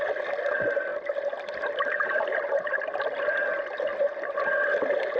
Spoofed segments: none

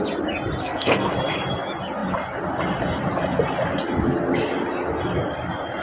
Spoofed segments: 0.6-1.1 (codec, SNAC)

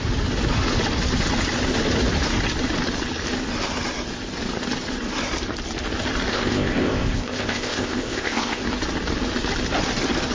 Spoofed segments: 6.3-8.6 (codec, ZipCodec)

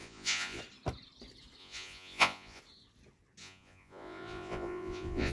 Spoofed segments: 0.0-0.6 (vocoder, Vocos); 1.6-2.6; 3.4-5.3